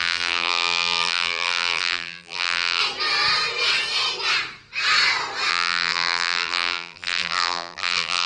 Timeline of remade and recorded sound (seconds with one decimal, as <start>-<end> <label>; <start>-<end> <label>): 0.0-2.8 remade; 2.8-5.5 recorded; 5.5-8.3 remade